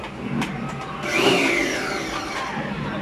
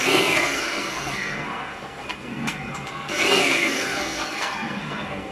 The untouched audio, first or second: first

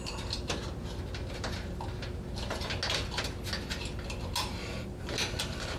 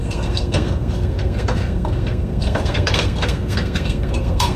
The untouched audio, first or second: first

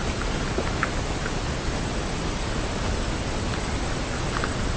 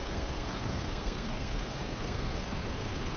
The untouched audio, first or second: first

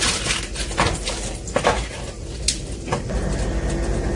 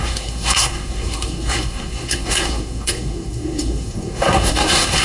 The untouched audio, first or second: first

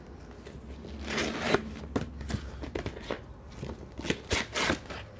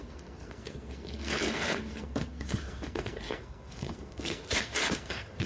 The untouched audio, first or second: first